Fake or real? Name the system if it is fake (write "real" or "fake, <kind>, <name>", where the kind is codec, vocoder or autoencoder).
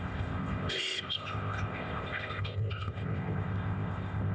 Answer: fake, codec, ZipCodec